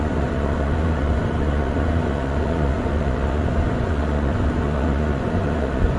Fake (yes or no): yes